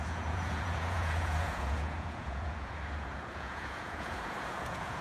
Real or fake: fake